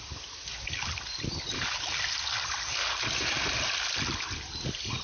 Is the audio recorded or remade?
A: remade